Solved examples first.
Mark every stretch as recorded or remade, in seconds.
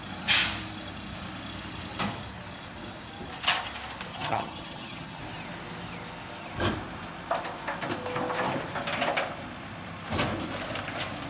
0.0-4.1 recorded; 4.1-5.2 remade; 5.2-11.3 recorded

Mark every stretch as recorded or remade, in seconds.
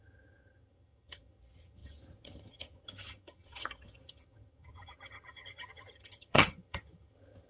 0.0-7.5 remade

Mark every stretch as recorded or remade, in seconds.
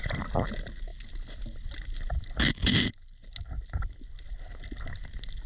0.0-5.5 recorded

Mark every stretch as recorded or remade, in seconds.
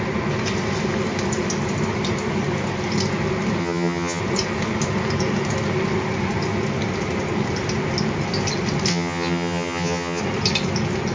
0.0-3.6 recorded; 3.6-4.2 remade; 4.2-8.9 recorded; 8.9-10.2 remade; 10.2-11.1 recorded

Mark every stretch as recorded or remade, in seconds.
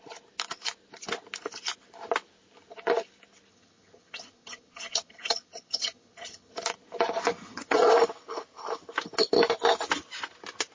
0.0-3.5 recorded; 3.5-6.5 remade; 6.5-7.4 recorded; 7.4-7.9 remade; 7.9-10.7 recorded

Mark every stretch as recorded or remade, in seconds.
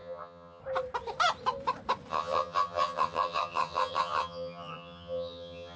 0.0-0.6 remade; 0.6-2.1 recorded; 2.1-5.8 remade